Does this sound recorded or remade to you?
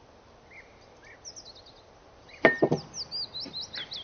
recorded